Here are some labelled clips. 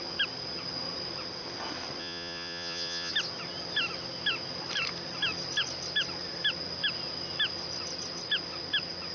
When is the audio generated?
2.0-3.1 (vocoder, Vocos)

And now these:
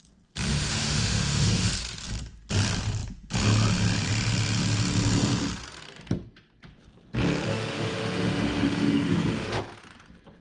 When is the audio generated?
0.5-1.7 (autoencoder, DAC-VAE); 7.5-9.6

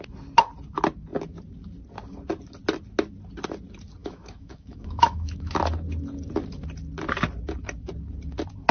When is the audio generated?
4.0-5.6 (autoencoder, DAC-VAE)

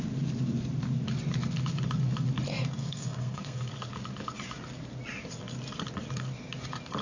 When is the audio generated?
2.8-3.7 (codec, SNAC)

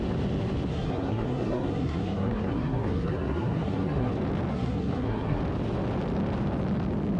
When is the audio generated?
0.7-4.1 (codec, SNAC); 4.5-5.4

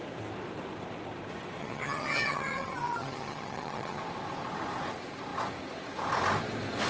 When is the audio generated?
1.6-4.0 (vocoder, HiFi-GAN)